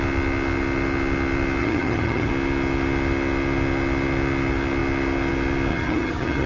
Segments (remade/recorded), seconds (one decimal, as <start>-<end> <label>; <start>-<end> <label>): 0.0-1.6 recorded; 1.6-2.3 remade; 2.3-5.7 recorded; 5.7-6.5 remade